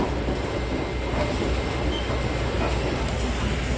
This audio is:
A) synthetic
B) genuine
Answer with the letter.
B